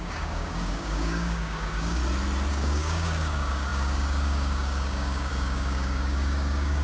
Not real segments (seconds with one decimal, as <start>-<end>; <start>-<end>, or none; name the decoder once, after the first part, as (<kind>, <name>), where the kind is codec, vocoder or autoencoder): 0.0-2.0 (codec, DAC); 2.5-6.8